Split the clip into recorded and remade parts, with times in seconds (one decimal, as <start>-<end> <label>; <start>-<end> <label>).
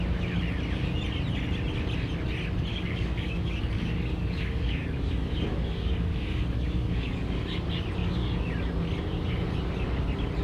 0.0-2.7 recorded; 2.7-7.4 remade; 7.4-8.0 recorded; 8.0-8.5 remade; 8.5-10.4 recorded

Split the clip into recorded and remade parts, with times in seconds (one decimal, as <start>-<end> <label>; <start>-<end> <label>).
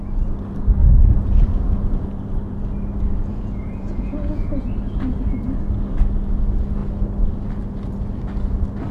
0.0-0.8 recorded; 0.8-2.1 remade; 2.1-3.3 recorded; 3.3-4.7 remade; 4.7-8.9 recorded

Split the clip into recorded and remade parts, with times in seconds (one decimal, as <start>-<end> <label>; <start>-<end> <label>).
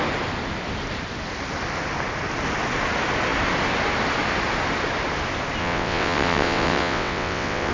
0.0-5.6 recorded; 5.6-7.7 remade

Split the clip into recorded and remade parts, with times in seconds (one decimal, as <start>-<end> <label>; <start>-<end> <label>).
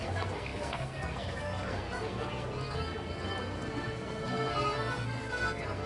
0.0-5.9 remade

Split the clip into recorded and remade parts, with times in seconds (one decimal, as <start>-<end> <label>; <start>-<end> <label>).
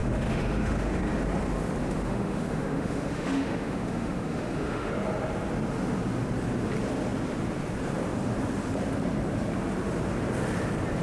0.0-1.0 remade; 1.0-1.8 recorded; 1.8-4.9 remade; 4.9-11.0 recorded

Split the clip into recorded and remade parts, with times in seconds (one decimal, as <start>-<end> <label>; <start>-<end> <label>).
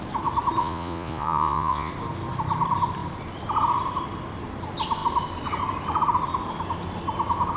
0.0-0.6 recorded; 0.6-1.9 remade; 1.9-7.6 recorded